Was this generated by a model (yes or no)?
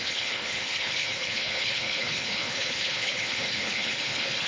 yes